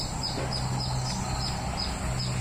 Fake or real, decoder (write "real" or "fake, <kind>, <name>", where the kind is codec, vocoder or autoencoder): real